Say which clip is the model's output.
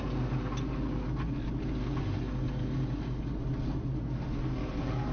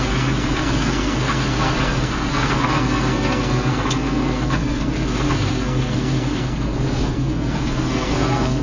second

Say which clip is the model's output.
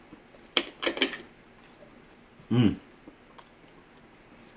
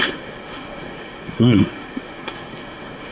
second